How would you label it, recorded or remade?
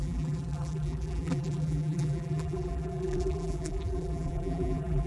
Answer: remade